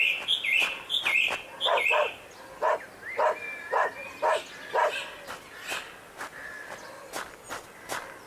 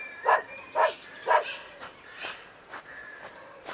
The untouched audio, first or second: first